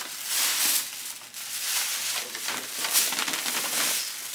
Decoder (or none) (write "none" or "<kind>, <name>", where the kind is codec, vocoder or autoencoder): none